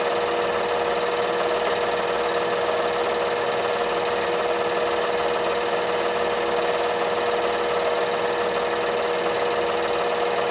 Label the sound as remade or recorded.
recorded